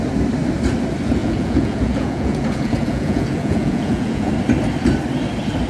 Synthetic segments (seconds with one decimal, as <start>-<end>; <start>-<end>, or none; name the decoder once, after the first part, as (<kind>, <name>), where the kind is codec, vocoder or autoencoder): 1.2-4.3 (vocoder, Vocos)